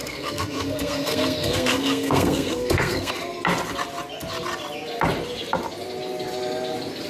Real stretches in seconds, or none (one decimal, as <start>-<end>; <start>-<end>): 3.1-7.1